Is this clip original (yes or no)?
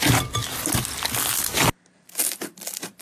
yes